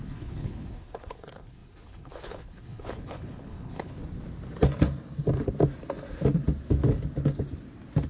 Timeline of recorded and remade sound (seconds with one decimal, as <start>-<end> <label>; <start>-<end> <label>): 0.0-4.0 remade; 4.0-8.1 recorded

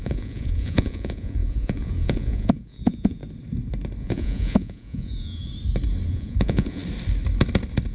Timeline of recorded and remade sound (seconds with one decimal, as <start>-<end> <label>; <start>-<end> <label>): 0.0-3.2 remade; 3.2-4.0 recorded; 4.0-5.5 remade; 5.5-6.1 recorded; 6.1-6.8 remade; 6.8-7.9 recorded

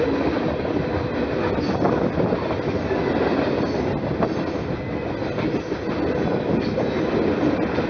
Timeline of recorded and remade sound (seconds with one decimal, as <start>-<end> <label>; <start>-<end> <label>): 0.0-7.9 recorded

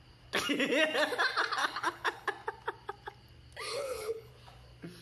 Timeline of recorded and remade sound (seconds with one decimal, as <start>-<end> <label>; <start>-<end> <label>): 0.0-1.6 recorded; 1.6-2.3 remade; 2.3-3.7 recorded; 3.7-4.3 remade; 4.3-5.0 recorded